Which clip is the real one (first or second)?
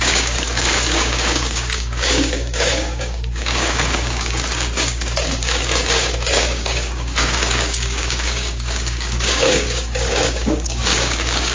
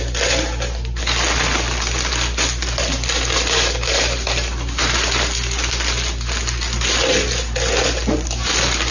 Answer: second